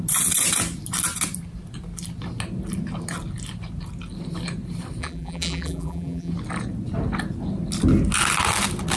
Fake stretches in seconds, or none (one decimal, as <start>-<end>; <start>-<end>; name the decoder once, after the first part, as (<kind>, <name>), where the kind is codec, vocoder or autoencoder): 5.0-6.3 (vocoder, BigVGAN v2)